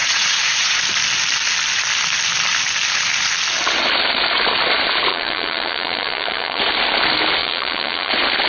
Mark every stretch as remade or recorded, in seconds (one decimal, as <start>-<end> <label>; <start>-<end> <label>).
0.0-0.8 remade; 0.8-5.1 recorded; 5.1-6.6 remade; 6.6-7.4 recorded; 7.4-8.1 remade; 8.1-8.5 recorded